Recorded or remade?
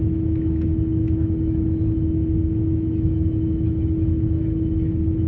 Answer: remade